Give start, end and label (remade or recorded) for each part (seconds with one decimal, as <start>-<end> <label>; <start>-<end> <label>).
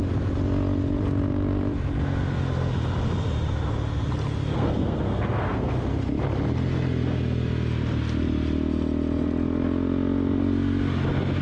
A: 0.0-4.5 recorded; 4.5-5.7 remade; 5.7-11.4 recorded